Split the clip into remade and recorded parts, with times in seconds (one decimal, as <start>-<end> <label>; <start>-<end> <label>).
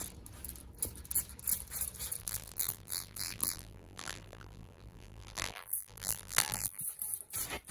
0.0-2.2 recorded; 2.2-6.8 remade; 6.8-7.7 recorded